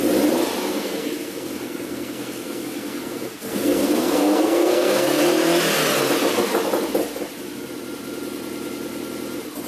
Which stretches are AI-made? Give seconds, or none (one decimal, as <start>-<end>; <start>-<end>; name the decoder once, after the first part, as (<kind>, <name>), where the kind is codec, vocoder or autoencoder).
0.7-5.2 (codec, SNAC)